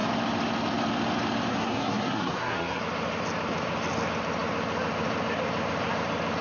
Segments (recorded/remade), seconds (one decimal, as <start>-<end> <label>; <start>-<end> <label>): 0.0-1.5 recorded; 1.5-2.8 remade; 2.8-6.4 recorded